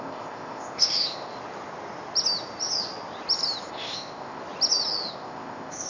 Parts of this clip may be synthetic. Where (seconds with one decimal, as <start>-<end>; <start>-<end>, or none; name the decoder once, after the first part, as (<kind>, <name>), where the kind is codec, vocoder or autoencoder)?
0.0-1.3 (codec, ZipCodec); 3.7-4.4; 5.1-5.9